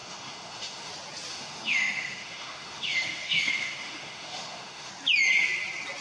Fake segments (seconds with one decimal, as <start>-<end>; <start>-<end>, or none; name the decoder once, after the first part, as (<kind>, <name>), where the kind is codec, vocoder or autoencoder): 0.0-0.9 (autoencoder, DAC-VAE); 1.3-4.9